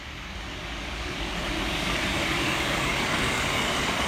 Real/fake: fake